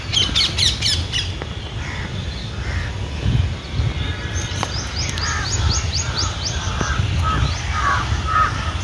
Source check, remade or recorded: recorded